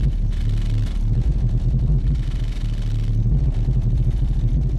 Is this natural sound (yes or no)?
yes